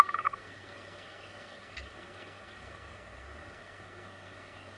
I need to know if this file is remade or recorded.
remade